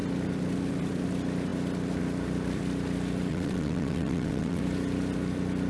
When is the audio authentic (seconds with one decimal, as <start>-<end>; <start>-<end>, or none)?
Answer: 0.0-3.3; 4.6-5.7